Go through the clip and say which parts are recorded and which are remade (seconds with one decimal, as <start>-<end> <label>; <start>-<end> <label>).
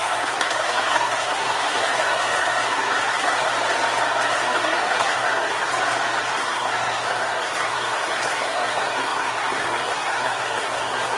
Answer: 0.0-3.5 remade; 3.5-4.3 recorded; 4.3-5.7 remade; 5.7-6.2 recorded; 6.2-11.2 remade